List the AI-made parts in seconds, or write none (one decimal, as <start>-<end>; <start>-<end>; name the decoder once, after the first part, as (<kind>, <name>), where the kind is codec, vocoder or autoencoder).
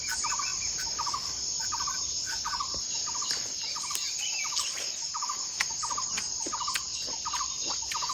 6.9-7.5 (vocoder, BigVGAN v2)